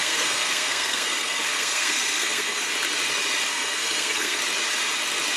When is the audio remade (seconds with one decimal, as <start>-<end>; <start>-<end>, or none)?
0.0-2.7; 3.5-4.4